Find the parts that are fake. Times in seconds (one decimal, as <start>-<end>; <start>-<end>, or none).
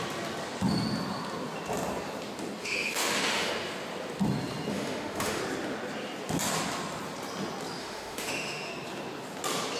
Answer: 2.6-3.5; 4.7-5.4; 7.8-8.7